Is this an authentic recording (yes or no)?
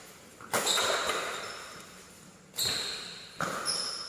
yes